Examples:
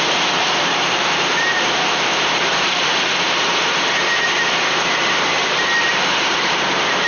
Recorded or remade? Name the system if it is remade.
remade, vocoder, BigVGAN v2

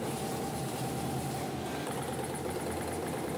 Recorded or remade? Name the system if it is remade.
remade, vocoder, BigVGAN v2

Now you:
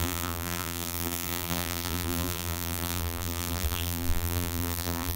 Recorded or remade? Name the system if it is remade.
remade, vocoder, BigVGAN v2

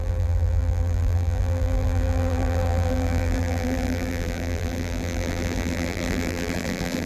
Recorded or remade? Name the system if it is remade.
remade, vocoder, BigVGAN v2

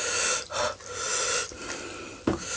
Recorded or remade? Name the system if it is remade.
recorded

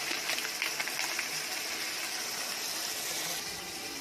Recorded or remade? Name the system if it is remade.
recorded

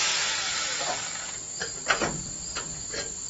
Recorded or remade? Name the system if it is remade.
recorded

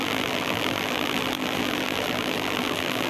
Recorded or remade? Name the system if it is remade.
remade, vocoder, BigVGAN v2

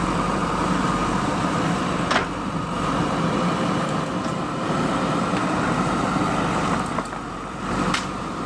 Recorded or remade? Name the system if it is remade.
remade, vocoder, BigVGAN v2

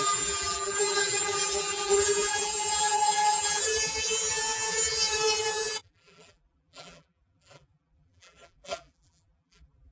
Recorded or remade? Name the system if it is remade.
remade, vocoder, BigVGAN v2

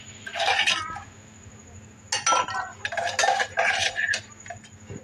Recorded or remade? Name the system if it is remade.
recorded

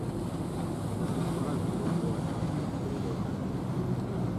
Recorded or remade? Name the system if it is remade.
recorded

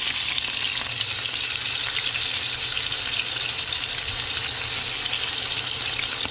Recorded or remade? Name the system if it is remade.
recorded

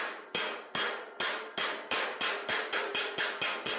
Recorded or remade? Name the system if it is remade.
recorded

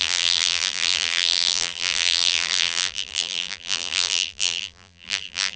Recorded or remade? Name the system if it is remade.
remade, vocoder, BigVGAN v2